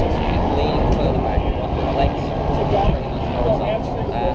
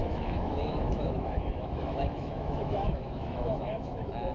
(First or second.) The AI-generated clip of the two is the second